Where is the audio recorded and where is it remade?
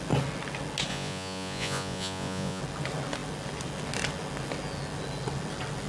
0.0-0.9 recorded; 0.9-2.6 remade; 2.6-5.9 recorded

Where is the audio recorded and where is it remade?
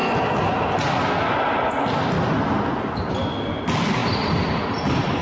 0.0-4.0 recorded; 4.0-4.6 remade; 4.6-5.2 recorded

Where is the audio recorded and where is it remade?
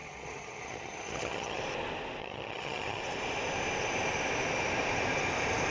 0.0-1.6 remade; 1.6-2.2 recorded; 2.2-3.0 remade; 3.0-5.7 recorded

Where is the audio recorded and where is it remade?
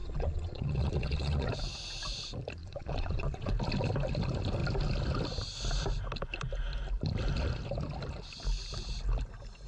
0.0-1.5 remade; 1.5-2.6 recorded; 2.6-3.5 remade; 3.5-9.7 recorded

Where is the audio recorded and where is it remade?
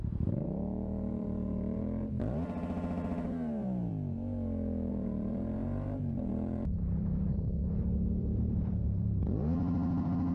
0.0-3.9 remade; 3.9-4.9 recorded; 4.9-10.3 remade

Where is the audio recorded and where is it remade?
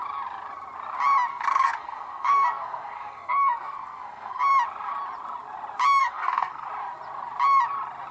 0.0-1.3 recorded; 1.3-4.4 remade; 4.4-6.0 recorded; 6.0-6.7 remade; 6.7-8.1 recorded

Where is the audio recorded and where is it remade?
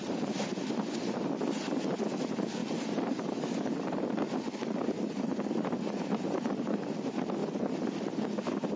0.0-2.6 recorded; 2.6-7.0 remade; 7.0-7.4 recorded; 7.4-8.8 remade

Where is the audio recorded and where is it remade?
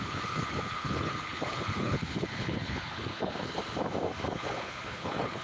0.0-3.6 remade; 3.6-4.3 recorded; 4.3-5.4 remade